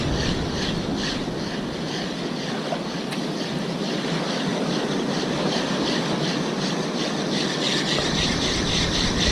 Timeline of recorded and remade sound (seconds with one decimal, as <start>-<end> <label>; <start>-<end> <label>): 0.0-9.3 recorded